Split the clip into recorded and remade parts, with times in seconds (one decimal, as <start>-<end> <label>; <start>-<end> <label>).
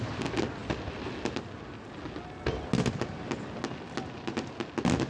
0.0-5.1 recorded